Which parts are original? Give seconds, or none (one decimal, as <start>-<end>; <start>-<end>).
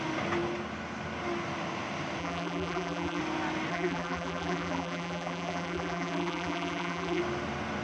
0.0-2.2; 3.2-3.7; 7.2-7.8